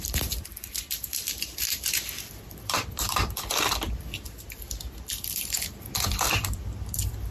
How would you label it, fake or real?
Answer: fake